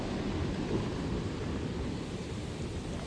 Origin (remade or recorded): recorded